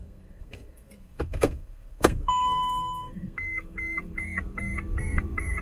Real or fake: fake